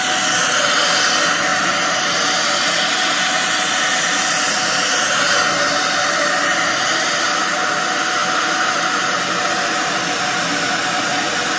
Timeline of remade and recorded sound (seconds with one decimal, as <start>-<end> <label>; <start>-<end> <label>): 0.0-11.6 recorded

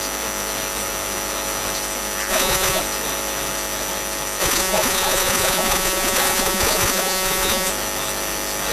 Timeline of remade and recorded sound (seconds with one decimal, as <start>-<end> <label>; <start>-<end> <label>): 0.0-2.3 recorded; 2.3-2.8 remade; 2.8-4.4 recorded; 4.4-7.7 remade; 7.7-8.7 recorded

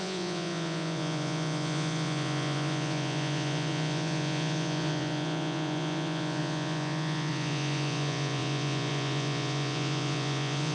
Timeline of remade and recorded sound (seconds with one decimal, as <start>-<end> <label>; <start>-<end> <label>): 0.0-10.7 remade